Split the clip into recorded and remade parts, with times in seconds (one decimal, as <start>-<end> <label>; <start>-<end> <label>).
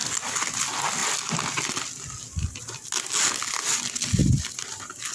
0.0-0.5 remade; 0.5-4.2 recorded; 4.2-5.1 remade